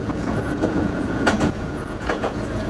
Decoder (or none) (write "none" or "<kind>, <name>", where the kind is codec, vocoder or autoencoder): vocoder, Vocos